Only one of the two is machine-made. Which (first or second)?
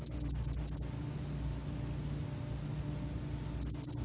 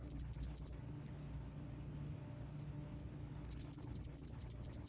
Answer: second